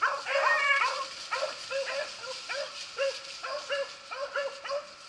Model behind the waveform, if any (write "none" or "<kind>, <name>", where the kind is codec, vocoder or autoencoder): none